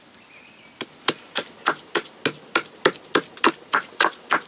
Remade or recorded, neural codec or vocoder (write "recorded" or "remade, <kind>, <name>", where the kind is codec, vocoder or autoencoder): recorded